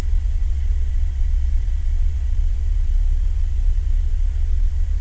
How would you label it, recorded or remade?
remade